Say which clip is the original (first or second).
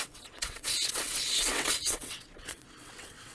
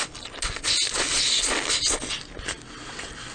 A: second